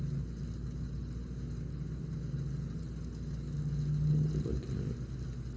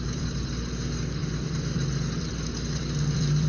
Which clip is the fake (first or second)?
second